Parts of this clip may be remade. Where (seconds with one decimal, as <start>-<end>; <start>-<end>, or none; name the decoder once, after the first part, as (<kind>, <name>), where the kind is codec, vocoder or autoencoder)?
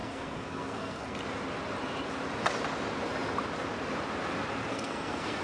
0.0-1.2 (codec, SNAC); 4.7-5.4